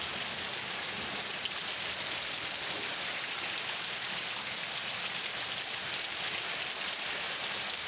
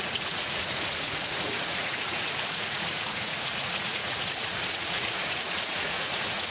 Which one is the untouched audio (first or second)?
first